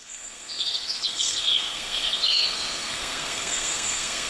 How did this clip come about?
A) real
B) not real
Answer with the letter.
B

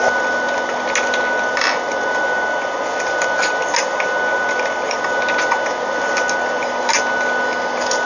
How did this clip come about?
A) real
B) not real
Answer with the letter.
A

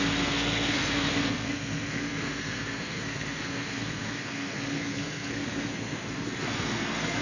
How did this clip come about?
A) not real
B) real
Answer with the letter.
A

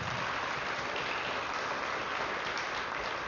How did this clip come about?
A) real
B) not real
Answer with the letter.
A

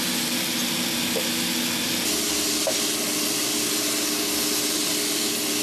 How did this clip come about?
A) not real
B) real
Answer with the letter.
B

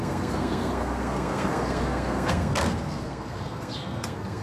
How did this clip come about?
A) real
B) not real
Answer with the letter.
B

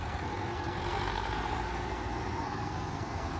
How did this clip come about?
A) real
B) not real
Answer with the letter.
B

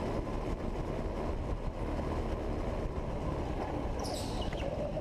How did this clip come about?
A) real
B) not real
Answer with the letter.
A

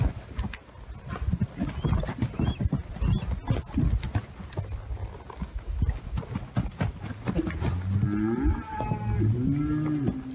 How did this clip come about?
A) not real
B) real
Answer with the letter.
B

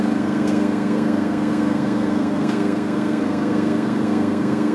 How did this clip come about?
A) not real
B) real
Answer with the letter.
A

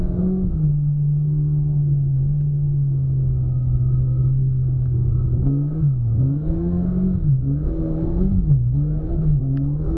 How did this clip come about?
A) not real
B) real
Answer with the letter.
A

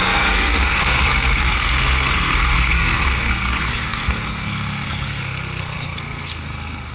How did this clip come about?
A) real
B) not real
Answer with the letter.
B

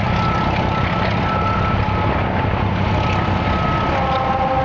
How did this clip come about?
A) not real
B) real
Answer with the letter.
B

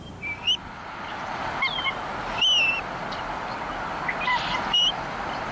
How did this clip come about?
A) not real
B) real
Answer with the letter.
B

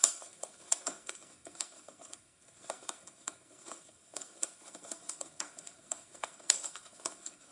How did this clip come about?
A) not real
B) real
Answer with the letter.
A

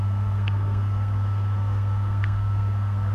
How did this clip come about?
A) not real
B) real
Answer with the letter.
A